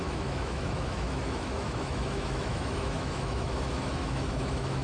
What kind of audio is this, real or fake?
fake